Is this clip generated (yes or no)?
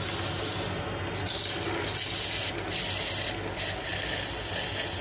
no